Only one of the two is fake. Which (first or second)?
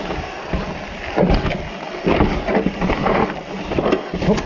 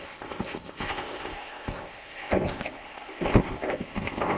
second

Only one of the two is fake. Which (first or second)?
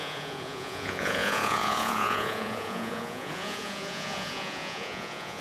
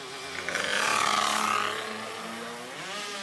first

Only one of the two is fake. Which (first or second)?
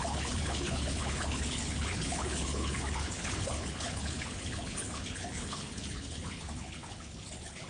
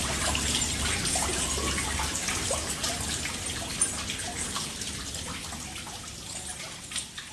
first